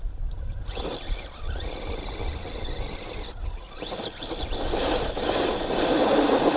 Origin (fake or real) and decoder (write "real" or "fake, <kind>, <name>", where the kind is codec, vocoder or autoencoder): real